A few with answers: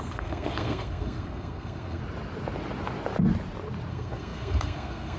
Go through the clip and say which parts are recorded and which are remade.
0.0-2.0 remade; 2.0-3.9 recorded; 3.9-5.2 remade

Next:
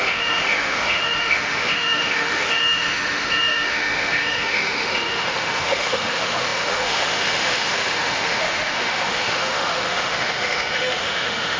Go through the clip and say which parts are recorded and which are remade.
0.0-11.6 remade

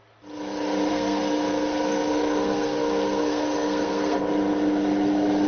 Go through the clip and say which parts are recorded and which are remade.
0.0-0.9 recorded; 0.9-4.2 remade; 4.2-5.5 recorded